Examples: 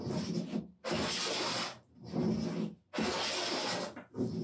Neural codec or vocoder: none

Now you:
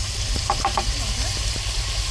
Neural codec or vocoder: vocoder, BigVGAN v2